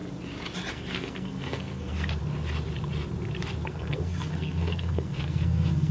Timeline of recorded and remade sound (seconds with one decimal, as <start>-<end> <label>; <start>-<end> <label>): 0.0-0.7 recorded; 0.7-2.2 remade; 2.2-3.7 recorded; 3.7-5.9 remade